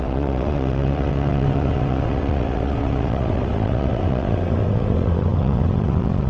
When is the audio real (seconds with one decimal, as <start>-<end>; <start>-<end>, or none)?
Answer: none